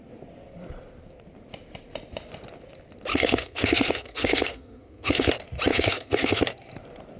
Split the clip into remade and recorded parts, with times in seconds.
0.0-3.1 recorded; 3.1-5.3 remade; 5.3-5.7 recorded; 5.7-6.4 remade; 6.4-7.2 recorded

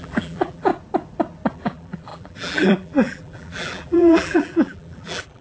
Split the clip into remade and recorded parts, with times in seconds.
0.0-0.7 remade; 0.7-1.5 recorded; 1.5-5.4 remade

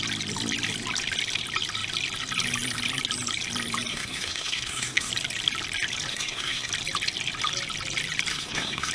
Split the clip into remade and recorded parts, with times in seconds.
0.0-3.9 recorded; 3.9-5.1 remade; 5.1-6.1 recorded; 6.1-6.7 remade; 6.7-8.3 recorded; 8.3-8.9 remade

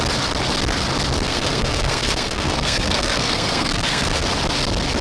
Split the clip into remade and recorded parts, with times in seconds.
0.0-1.3 recorded; 1.3-4.3 remade; 4.3-5.0 recorded